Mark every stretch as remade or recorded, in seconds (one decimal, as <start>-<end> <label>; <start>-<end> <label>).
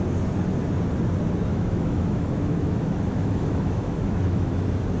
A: 0.0-1.5 recorded; 1.5-4.5 remade; 4.5-5.0 recorded